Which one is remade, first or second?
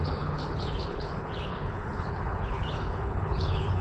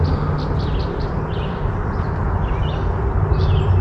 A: first